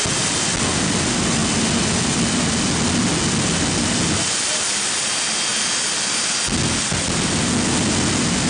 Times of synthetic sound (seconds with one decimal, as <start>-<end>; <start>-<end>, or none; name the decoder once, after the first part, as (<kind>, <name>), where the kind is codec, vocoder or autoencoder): none